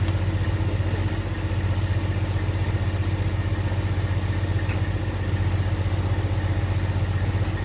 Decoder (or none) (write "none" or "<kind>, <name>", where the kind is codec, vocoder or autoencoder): none